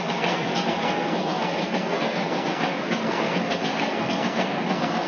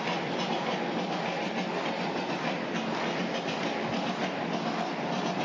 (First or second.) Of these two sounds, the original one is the second